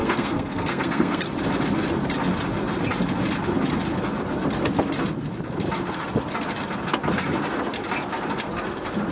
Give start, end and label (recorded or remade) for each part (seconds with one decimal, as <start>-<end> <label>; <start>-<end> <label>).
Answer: 0.0-1.3 remade; 1.3-9.1 recorded